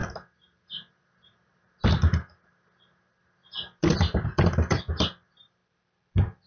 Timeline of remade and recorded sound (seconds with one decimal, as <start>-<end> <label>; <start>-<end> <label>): 0.0-3.9 recorded; 3.9-5.6 remade; 5.6-6.5 recorded